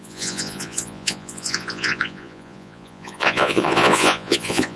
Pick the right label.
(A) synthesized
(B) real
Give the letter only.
A